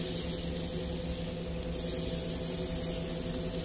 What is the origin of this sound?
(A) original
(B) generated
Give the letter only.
A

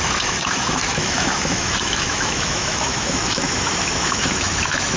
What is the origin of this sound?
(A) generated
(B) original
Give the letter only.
A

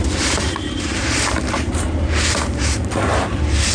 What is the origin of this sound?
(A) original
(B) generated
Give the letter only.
B